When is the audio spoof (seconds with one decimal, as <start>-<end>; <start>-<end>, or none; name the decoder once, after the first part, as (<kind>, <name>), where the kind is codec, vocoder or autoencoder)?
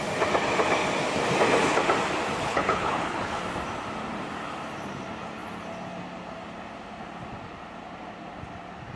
2.4-3.4 (codec, HILCodec)